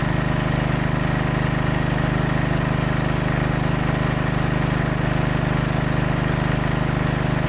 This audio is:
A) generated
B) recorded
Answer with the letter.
B